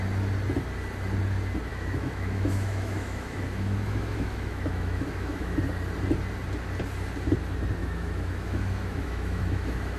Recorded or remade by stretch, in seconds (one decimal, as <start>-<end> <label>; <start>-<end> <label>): 0.0-1.7 recorded; 1.7-5.6 remade; 5.6-7.8 recorded; 7.8-10.0 remade